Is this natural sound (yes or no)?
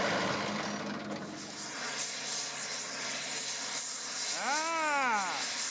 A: yes